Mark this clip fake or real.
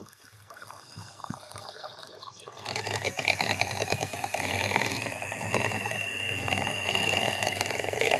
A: fake